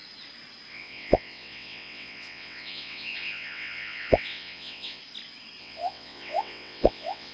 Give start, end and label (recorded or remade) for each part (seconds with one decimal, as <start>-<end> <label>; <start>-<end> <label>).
0.0-0.7 recorded; 0.7-5.0 remade; 5.0-5.6 recorded; 5.6-7.3 remade